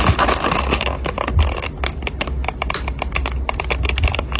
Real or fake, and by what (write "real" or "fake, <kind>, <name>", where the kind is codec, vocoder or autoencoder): real